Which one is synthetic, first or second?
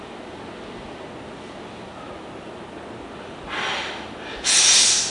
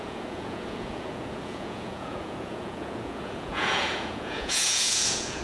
second